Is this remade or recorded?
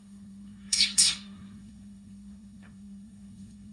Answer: remade